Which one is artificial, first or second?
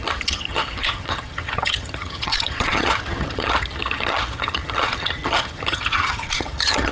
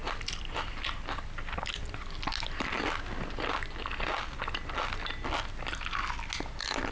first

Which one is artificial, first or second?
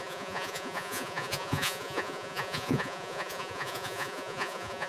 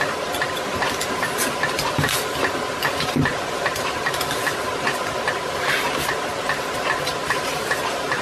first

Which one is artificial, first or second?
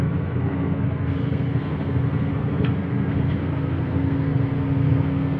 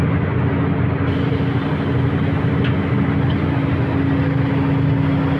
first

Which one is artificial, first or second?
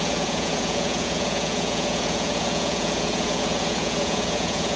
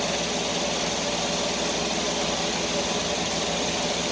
first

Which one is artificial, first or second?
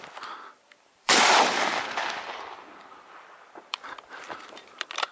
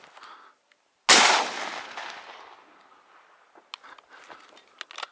first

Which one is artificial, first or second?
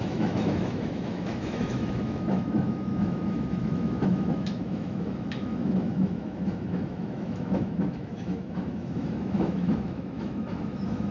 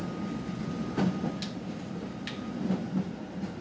first